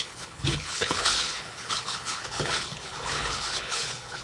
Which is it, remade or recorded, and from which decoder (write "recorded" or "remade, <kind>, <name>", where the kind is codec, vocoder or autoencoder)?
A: remade, codec, HILCodec